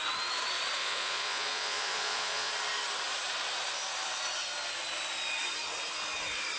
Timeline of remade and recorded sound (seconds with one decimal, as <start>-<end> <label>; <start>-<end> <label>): 0.0-0.8 recorded; 0.8-2.5 remade; 2.5-6.6 recorded